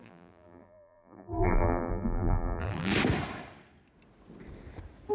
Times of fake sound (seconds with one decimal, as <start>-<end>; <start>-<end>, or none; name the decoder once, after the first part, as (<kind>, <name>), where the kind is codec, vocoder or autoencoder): 0.0-2.9 (vocoder, BigVGAN v2)